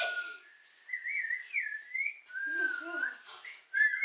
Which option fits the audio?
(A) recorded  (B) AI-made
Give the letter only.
A